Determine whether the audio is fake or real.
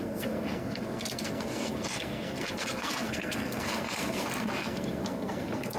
fake